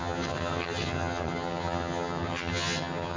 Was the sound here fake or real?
fake